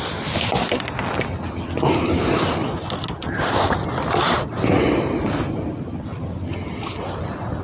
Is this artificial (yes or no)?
no